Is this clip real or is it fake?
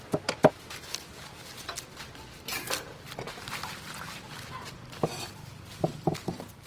real